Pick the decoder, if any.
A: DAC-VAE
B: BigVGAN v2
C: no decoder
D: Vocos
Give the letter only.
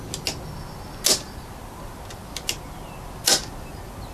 C